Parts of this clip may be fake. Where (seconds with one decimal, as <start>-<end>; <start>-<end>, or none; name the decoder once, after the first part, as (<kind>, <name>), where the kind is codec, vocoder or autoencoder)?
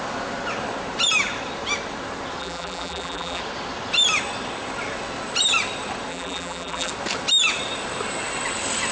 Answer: 2.4-3.4 (vocoder, BigVGAN v2); 6.1-6.9